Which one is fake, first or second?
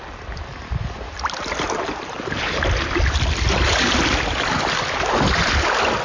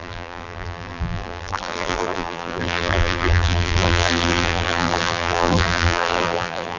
second